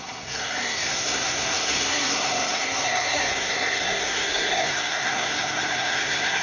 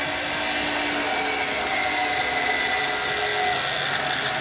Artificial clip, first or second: first